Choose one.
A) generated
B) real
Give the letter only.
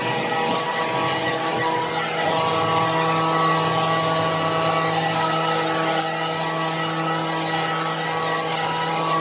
B